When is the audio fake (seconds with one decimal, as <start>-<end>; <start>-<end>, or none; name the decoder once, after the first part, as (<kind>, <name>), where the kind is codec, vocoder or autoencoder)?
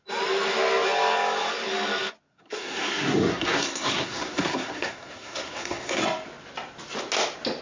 2.3-6.0 (codec, SNAC)